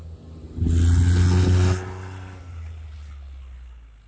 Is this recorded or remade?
recorded